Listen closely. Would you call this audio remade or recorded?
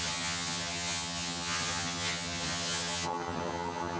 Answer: remade